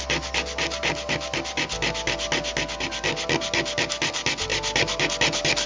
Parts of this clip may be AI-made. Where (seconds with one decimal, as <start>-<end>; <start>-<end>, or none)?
none